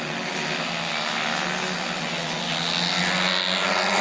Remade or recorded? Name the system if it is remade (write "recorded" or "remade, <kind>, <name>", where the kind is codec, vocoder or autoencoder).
recorded